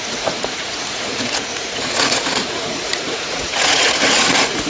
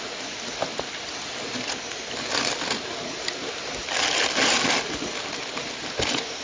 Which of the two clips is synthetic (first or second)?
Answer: first